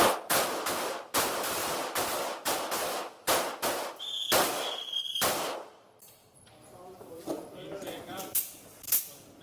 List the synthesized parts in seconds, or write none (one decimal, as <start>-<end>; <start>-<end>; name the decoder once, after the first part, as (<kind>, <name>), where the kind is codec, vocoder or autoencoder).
0.0-9.4 (vocoder, BigVGAN v2)